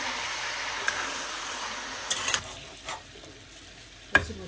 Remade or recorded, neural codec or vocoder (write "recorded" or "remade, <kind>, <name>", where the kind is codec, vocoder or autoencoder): recorded